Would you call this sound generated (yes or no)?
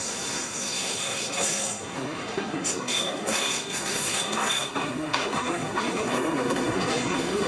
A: yes